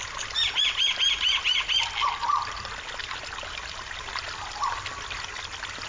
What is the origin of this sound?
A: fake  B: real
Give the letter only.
B